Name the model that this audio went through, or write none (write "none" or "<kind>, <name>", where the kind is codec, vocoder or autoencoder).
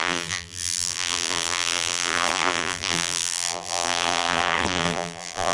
vocoder, BigVGAN v2